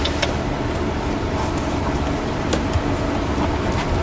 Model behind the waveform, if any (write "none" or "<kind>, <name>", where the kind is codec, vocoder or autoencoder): none